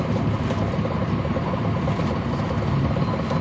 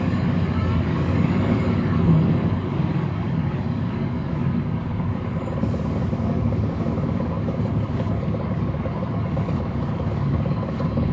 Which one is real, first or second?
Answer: first